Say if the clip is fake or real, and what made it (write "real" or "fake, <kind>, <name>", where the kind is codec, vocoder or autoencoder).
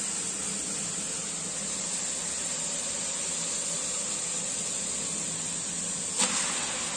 real